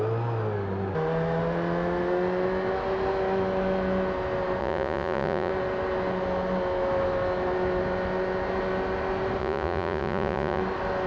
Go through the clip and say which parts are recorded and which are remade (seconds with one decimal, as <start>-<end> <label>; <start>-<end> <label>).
0.0-4.6 recorded; 4.6-5.5 remade; 5.5-9.4 recorded; 9.4-10.6 remade; 10.6-11.1 recorded